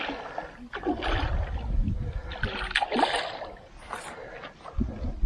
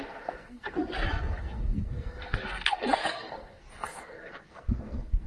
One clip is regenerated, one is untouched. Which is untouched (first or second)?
first